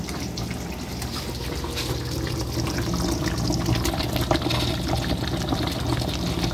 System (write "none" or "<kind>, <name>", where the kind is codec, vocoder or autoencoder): none